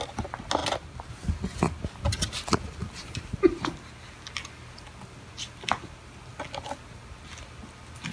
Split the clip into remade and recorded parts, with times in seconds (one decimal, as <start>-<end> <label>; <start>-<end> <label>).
0.0-8.1 recorded